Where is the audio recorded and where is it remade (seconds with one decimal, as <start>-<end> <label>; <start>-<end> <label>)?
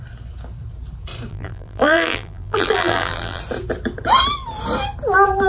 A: 0.0-1.3 recorded; 1.3-3.4 remade; 3.4-5.5 recorded